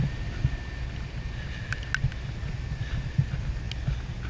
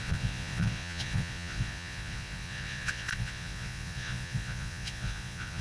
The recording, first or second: first